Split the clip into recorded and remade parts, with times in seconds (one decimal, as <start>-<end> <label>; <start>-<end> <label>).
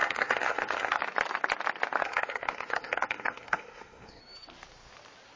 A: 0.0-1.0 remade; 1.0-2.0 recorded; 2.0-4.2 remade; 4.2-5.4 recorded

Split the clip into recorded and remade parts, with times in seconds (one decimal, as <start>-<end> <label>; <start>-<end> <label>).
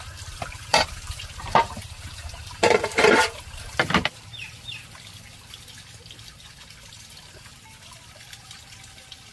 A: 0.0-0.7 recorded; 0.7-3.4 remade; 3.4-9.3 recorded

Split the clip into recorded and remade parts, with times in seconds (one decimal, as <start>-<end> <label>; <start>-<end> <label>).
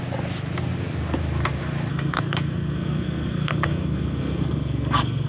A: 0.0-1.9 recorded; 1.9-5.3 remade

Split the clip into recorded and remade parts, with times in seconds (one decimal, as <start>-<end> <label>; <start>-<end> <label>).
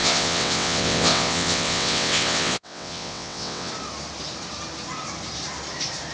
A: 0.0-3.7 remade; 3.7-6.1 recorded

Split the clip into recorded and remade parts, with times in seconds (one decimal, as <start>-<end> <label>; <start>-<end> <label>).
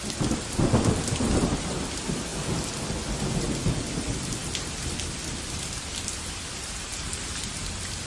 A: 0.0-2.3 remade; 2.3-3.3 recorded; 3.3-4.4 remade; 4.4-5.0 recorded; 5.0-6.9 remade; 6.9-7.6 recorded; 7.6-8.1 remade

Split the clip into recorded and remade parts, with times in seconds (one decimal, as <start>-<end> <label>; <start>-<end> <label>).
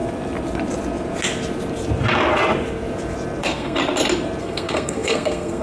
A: 0.0-3.4 recorded; 3.4-3.8 remade; 3.8-4.4 recorded; 4.4-5.6 remade